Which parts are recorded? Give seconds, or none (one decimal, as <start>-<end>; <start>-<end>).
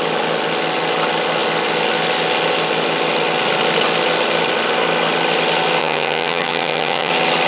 0.0-5.8; 7.1-7.5